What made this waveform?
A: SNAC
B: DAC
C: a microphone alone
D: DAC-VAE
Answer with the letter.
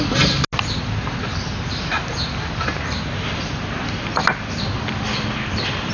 C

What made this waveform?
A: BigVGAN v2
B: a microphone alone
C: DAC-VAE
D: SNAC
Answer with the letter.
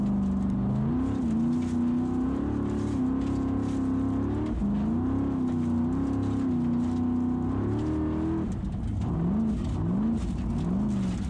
B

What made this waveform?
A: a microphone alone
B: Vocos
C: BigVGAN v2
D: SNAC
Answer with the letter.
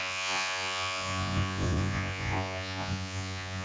B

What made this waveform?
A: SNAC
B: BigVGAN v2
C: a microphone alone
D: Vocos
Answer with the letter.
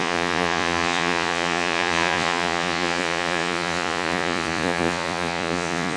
D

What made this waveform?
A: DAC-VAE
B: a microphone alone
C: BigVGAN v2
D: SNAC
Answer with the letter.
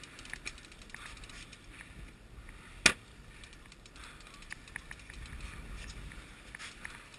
B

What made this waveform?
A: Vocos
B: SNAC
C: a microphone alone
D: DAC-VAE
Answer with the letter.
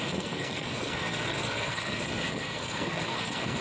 B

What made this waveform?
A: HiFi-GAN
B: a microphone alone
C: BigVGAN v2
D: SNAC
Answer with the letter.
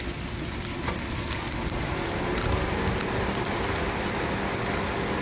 B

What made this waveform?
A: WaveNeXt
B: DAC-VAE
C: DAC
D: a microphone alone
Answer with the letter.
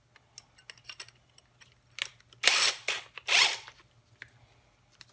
D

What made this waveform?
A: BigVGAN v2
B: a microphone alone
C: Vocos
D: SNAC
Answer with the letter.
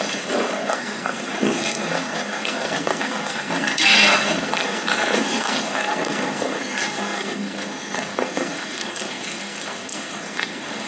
D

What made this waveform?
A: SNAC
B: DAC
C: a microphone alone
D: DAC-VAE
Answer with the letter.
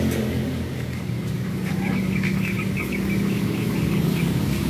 B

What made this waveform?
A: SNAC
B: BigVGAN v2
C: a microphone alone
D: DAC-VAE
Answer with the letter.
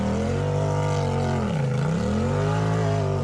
C